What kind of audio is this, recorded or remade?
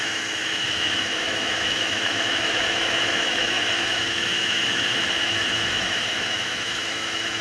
remade